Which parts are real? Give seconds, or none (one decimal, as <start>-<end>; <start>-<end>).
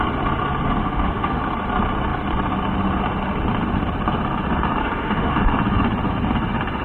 0.0-0.8; 1.4-4.8; 5.4-6.8